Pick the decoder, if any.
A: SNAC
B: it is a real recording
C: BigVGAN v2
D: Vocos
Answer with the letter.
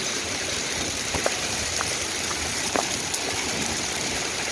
C